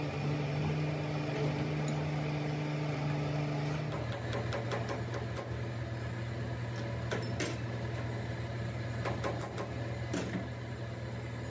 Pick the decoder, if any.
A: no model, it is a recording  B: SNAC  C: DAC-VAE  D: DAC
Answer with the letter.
A